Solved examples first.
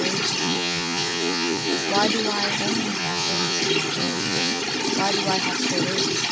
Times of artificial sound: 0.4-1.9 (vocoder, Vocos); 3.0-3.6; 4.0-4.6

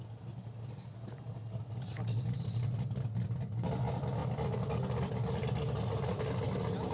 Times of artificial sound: none

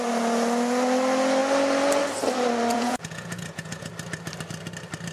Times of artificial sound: 2.7-3.9 (vocoder, Vocos)

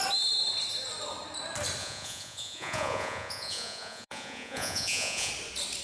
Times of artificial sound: 1.8-5.3 (vocoder, Vocos)

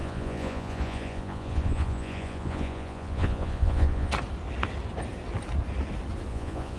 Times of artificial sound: 0.0-4.1 (vocoder, Vocos); 6.3-6.8

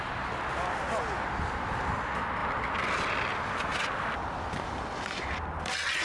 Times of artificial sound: none

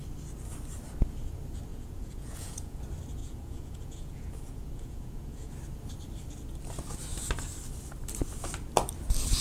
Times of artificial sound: 1.7-2.8 (vocoder, Vocos); 3.2-5.5

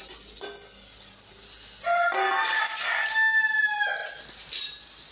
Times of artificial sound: none